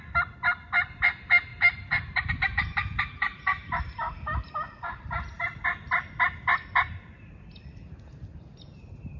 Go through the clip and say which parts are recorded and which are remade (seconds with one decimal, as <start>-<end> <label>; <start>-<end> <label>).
0.0-1.5 recorded; 1.5-5.6 remade; 5.6-9.2 recorded